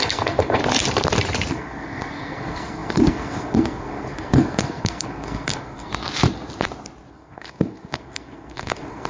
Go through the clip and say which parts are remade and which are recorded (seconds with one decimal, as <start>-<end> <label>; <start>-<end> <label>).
0.0-0.6 remade; 0.6-1.5 recorded; 1.5-5.9 remade; 5.9-7.1 recorded; 7.1-9.1 remade